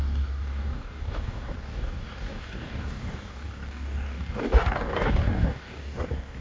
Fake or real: fake